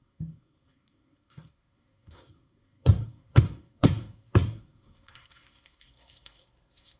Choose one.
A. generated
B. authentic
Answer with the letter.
A